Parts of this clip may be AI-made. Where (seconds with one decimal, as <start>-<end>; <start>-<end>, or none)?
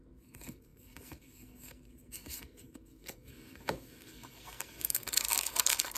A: 0.0-6.0